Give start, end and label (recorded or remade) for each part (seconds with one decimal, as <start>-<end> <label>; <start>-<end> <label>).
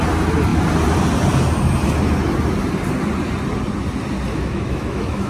0.0-4.3 recorded; 4.3-5.3 remade